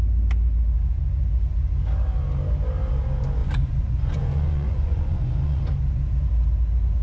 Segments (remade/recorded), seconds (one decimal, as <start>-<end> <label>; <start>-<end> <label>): 0.0-3.4 recorded; 3.4-5.6 remade; 5.6-7.0 recorded